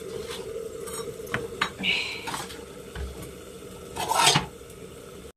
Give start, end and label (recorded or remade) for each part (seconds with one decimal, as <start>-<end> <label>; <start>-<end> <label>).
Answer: 0.0-5.4 recorded